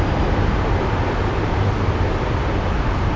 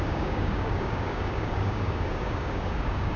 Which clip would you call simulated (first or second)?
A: second